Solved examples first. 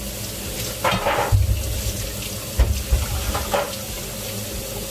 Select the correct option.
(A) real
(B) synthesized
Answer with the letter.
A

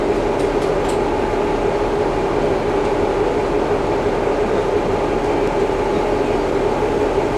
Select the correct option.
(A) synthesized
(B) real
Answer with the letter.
B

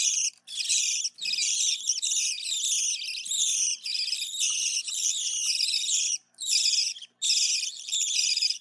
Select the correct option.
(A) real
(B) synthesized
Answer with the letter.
A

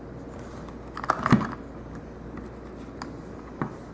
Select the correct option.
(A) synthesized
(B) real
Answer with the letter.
B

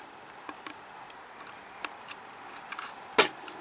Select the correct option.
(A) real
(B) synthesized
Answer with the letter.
A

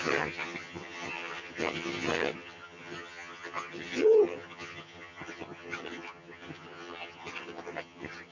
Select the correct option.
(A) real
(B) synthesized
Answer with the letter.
B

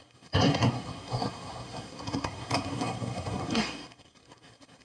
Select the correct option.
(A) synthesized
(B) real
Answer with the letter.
A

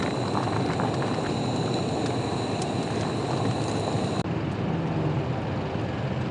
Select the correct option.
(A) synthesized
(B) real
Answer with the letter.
B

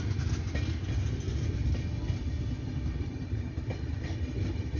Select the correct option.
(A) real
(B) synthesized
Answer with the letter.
A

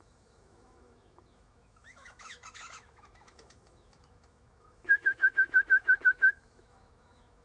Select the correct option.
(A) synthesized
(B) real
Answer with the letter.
A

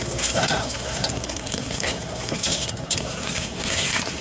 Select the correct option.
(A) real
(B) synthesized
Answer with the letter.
B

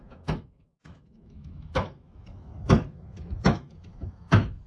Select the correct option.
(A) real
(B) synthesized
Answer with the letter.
B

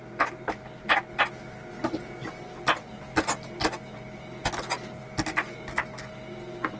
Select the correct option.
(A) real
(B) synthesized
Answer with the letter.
A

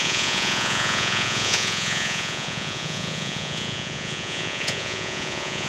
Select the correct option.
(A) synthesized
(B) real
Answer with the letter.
A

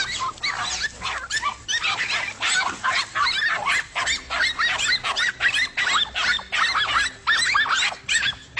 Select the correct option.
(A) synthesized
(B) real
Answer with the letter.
B